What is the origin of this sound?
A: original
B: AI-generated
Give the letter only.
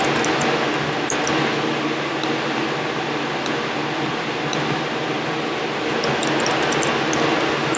A